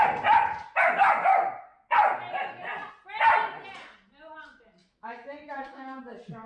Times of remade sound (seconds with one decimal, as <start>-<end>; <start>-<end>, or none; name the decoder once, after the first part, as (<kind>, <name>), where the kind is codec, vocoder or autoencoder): 4.8-6.0 (autoencoder, DAC-VAE)